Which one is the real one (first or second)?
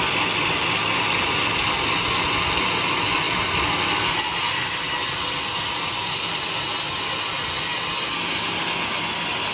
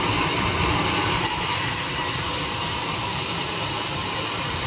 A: first